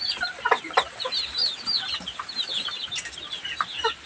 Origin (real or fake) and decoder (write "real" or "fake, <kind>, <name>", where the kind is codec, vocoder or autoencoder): fake, vocoder, BigVGAN v2